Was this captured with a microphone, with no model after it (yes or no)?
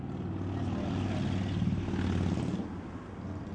yes